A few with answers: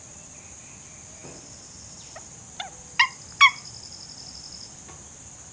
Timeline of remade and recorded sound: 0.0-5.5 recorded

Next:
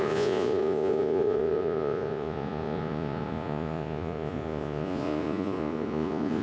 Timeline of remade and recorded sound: 0.0-6.4 remade

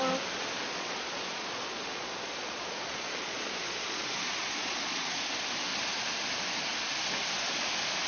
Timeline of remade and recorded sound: 0.0-0.7 recorded; 0.7-5.2 remade; 5.2-8.1 recorded